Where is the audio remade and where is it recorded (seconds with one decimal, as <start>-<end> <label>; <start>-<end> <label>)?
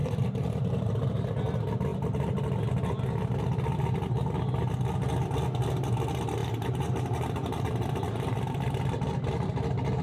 0.0-1.3 remade; 1.3-6.4 recorded; 6.4-8.7 remade; 8.7-10.0 recorded